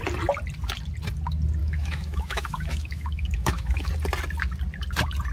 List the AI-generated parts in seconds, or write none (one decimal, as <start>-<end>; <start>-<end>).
1.6-3.9